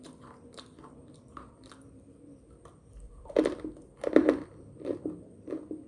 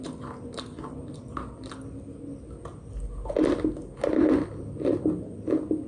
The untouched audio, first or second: second